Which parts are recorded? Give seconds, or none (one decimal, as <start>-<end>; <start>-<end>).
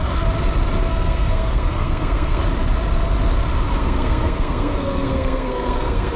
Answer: 0.0-0.9; 2.4-3.8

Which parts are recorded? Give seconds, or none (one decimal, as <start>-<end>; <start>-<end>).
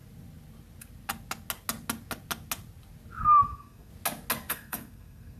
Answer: 0.0-3.2; 3.9-4.5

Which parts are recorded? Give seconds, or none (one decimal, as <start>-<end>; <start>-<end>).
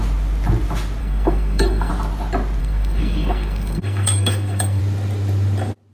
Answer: 0.0-1.0; 1.9-2.6; 4.8-5.9